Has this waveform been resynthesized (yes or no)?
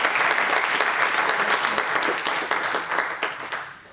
no